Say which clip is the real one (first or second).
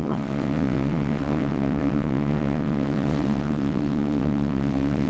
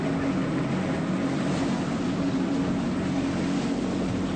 second